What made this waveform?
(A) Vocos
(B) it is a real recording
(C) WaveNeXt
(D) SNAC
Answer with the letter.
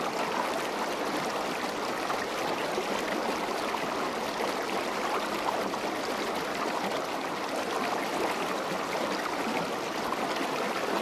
B